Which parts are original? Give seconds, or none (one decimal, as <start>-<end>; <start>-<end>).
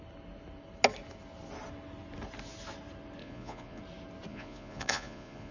0.0-3.2; 3.8-4.3